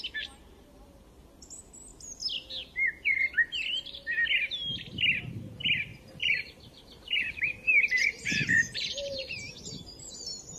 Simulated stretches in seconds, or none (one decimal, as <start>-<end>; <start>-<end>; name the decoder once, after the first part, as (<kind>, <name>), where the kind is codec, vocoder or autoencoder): 5.9-10.1 (vocoder, BigVGAN v2)